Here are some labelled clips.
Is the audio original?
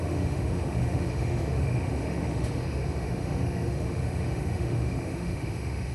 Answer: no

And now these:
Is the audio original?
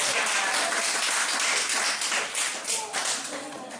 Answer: yes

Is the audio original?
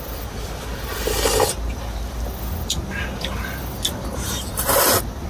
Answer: yes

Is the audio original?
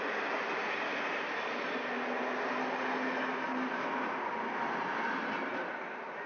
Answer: yes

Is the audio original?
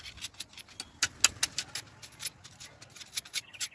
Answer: yes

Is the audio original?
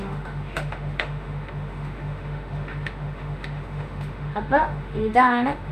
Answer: no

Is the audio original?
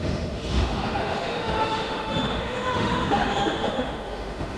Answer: no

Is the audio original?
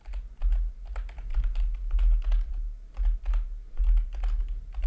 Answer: yes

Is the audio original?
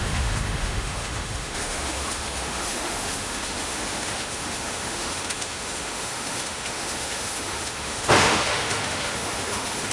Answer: no